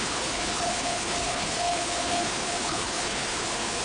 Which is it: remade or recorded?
remade